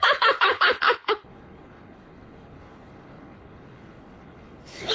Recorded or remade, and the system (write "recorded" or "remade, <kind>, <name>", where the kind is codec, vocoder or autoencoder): remade, codec, HILCodec